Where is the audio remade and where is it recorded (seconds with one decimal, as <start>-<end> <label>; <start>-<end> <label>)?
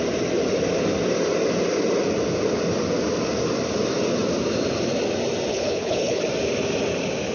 0.0-5.5 recorded; 5.5-6.2 remade; 6.2-7.3 recorded